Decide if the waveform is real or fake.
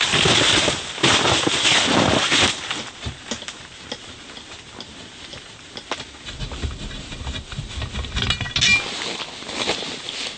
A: real